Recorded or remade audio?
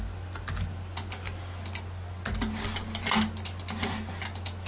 recorded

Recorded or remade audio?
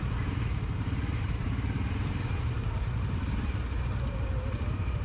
remade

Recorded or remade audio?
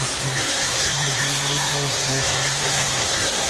remade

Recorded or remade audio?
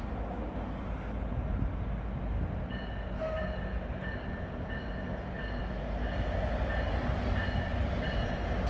recorded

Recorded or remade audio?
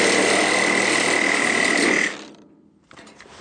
recorded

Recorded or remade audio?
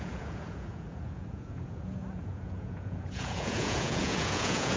remade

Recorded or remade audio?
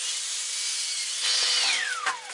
recorded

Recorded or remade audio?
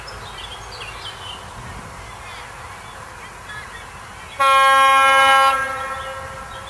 recorded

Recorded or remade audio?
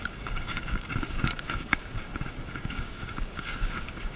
remade